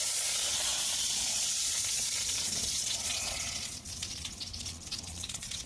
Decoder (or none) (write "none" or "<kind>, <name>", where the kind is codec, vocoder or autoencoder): vocoder, Vocos